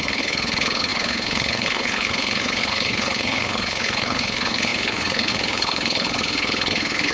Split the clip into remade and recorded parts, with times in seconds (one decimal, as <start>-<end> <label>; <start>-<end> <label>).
0.0-7.1 remade